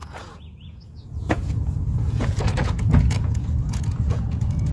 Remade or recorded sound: remade